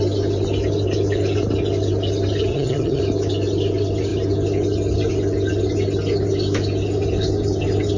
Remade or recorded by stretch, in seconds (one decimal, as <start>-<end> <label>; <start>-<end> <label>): 0.0-2.5 recorded; 2.5-3.0 remade; 3.0-8.0 recorded